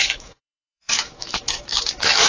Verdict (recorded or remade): remade